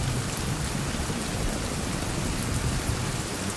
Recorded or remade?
recorded